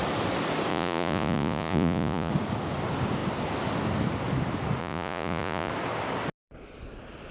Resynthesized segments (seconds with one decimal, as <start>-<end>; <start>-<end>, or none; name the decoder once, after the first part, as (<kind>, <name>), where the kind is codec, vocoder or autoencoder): 0.7-2.3 (vocoder, Vocos); 4.8-5.7